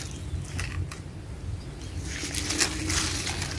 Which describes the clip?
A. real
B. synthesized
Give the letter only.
A